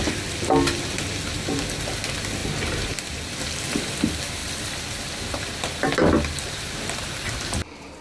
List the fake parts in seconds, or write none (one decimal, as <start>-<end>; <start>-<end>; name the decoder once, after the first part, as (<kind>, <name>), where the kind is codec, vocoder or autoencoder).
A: 2.4-3.9 (vocoder, BigVGAN v2); 4.4-8.0